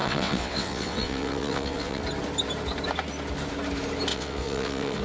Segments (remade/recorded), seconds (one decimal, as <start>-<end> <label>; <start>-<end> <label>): 0.0-2.0 remade; 2.0-4.1 recorded; 4.1-5.0 remade